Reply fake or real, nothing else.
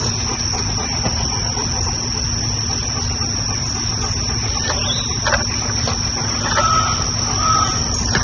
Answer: real